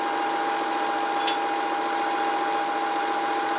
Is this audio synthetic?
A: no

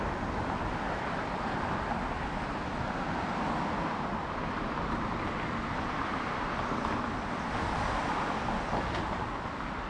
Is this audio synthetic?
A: no